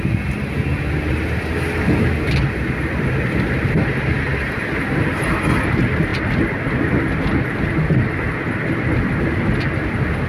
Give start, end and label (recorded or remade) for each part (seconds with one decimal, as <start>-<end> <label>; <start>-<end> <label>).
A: 0.0-10.3 recorded